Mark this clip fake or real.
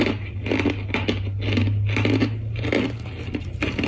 real